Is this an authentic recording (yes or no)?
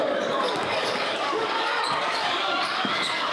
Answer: no